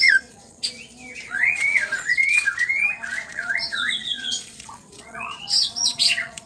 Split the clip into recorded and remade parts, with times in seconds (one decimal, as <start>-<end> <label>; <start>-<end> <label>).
0.0-0.6 remade; 0.6-1.3 recorded; 1.3-2.8 remade; 2.8-3.3 recorded; 3.3-6.5 remade